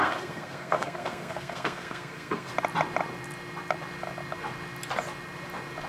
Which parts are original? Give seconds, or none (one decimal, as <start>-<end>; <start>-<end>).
2.5-5.9